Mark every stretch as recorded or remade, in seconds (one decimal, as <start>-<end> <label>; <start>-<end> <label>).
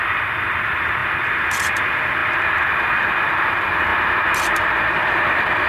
0.0-1.0 remade; 1.0-1.8 recorded; 1.8-2.2 remade; 2.2-2.7 recorded; 2.7-3.9 remade; 3.9-4.4 recorded; 4.4-5.7 remade